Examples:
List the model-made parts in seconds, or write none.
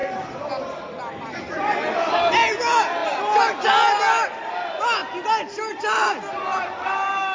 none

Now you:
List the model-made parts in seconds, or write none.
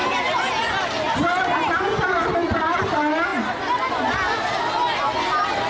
none